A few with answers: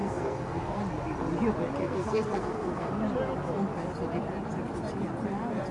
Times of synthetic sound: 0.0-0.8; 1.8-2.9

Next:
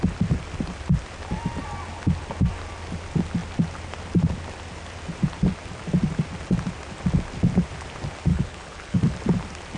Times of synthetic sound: 8.3-9.0

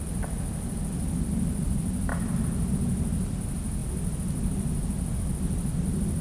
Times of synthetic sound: none

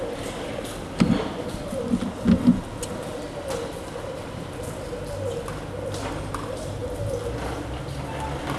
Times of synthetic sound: none

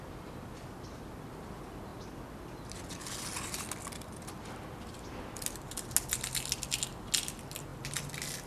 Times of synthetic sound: none

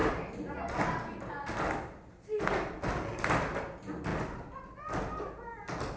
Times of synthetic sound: none

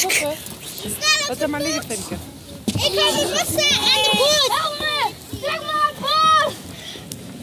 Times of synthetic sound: none